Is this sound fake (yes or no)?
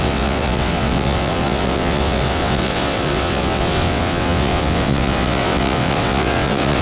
yes